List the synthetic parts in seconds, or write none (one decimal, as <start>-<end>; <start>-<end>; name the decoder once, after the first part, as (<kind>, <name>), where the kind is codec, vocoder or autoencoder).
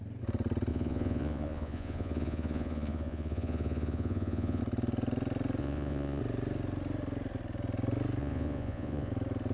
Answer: 0.7-4.6 (vocoder, Vocos); 5.6-6.2; 8.2-9.1